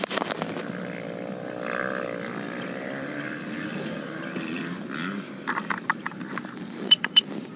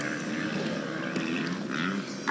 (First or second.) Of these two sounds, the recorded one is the second